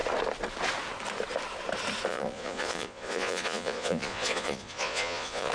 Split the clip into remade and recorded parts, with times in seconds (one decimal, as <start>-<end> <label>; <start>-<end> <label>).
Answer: 0.0-2.1 recorded; 2.1-5.5 remade